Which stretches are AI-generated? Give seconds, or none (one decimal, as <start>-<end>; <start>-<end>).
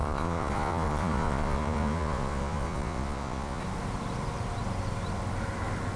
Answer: 0.0-3.6